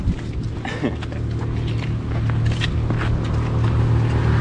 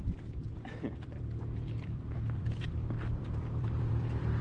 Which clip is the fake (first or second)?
second